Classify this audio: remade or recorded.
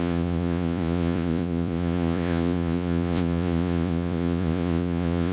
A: remade